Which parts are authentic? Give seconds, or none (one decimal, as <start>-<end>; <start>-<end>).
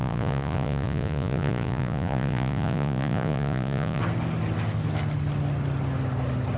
4.0-6.6